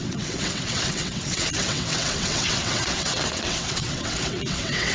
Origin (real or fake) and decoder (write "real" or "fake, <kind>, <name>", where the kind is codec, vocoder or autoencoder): fake, vocoder, WaveNeXt